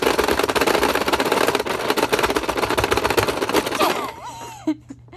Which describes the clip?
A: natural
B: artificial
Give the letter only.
A